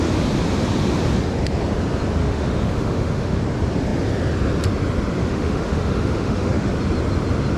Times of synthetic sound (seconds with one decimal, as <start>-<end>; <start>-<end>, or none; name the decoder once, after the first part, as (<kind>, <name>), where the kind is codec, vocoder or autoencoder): 2.2-3.4 (autoencoder, DAC-VAE); 5.2-6.7